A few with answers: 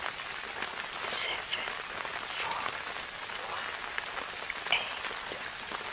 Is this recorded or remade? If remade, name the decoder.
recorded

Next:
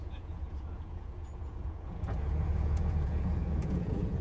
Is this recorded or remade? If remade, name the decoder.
remade, vocoder, Vocos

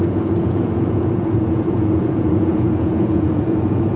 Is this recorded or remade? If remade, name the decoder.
remade, vocoder, Vocos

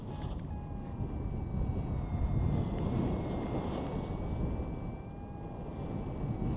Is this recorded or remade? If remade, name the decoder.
recorded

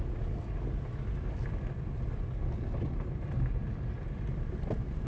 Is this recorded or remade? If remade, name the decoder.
recorded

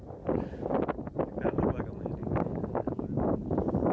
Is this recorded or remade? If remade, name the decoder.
recorded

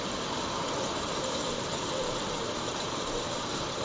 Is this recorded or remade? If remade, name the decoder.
remade, vocoder, BigVGAN v2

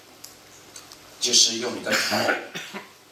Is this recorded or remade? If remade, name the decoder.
recorded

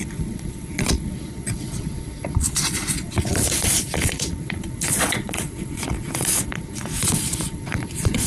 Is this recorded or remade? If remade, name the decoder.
remade, vocoder, Vocos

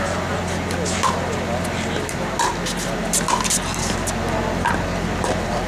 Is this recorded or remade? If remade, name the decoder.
recorded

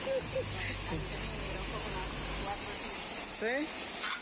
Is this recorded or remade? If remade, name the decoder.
recorded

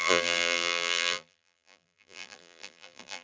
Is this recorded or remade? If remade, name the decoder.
remade, vocoder, BigVGAN v2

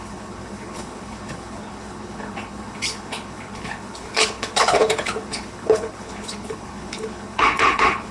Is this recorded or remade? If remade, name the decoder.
remade, codec, HILCodec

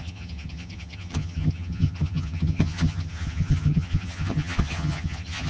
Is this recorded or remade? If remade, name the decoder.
remade, vocoder, HiFi-GAN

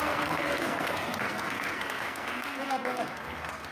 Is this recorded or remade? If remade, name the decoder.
remade, codec, SNAC